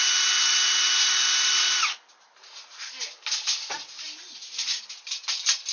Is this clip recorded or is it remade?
recorded